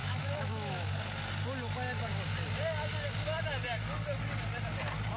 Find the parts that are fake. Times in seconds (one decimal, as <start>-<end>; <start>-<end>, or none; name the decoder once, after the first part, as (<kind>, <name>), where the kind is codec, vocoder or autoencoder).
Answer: 0.0-0.9 (autoencoder, DAC-VAE)